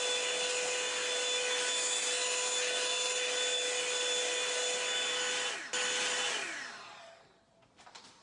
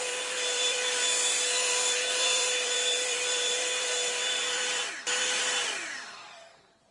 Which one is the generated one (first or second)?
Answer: second